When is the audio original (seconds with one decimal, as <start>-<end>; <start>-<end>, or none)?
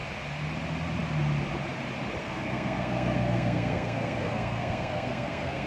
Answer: 0.0-2.2